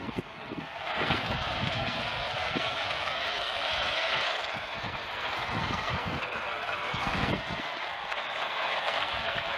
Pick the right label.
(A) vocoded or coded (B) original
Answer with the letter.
A